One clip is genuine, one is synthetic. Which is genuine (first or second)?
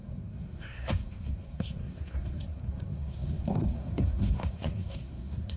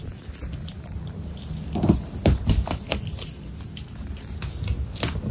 second